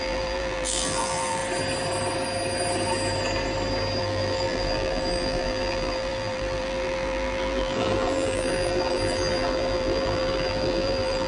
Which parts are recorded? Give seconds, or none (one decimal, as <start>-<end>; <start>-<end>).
1.4-4.0